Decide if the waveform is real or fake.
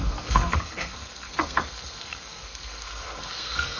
fake